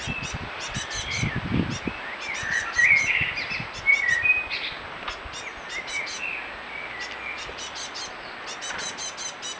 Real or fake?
real